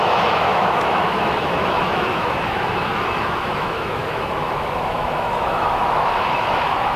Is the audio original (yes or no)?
no